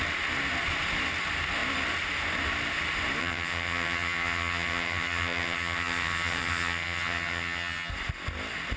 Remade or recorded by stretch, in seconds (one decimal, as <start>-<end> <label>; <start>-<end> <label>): 0.0-3.2 recorded; 3.2-7.9 remade; 7.9-8.8 recorded